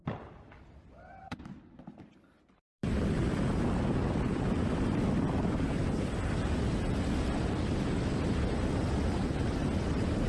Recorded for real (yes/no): no